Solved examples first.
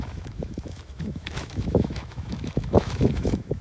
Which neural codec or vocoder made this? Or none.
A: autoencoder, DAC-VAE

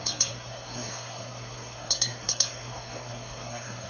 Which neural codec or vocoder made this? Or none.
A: codec, SNAC